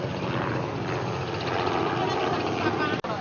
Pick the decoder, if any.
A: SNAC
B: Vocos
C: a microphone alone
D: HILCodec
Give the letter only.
C